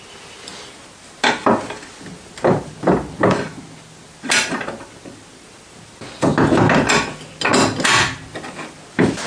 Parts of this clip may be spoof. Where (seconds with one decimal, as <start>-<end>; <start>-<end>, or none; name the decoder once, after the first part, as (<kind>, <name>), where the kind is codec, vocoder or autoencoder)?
none